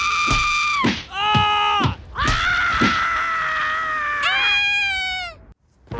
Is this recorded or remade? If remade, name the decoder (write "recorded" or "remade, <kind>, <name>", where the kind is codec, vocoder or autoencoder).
recorded